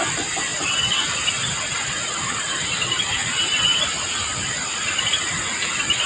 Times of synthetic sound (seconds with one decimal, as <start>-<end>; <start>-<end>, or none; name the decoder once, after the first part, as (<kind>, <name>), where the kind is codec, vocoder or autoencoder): none